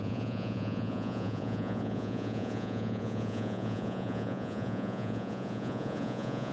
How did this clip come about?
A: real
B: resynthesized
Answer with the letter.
B